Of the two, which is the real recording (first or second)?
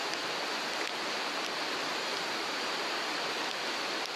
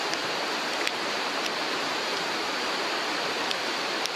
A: first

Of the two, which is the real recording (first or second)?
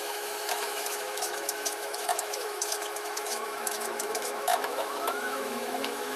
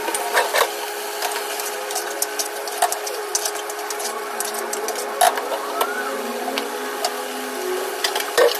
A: second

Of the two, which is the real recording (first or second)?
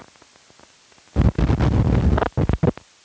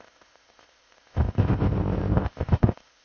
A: first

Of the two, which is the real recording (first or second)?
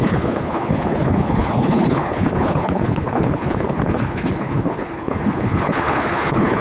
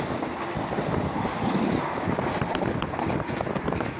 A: second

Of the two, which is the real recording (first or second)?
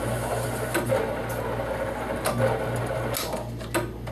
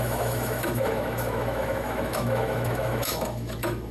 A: first